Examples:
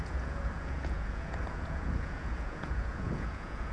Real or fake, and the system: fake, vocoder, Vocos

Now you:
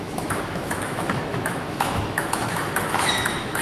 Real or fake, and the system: fake, autoencoder, DAC-VAE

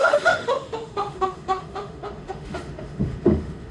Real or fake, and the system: fake, autoencoder, DAC-VAE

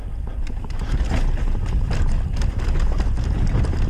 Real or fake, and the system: real